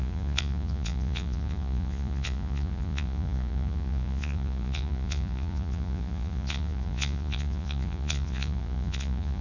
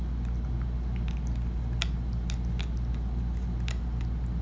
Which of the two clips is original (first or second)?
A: second